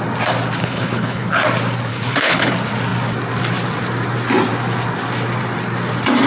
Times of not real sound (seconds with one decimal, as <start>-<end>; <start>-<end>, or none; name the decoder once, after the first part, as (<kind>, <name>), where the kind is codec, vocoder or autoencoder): 0.6-1.3 (codec, HILCodec); 1.9-2.5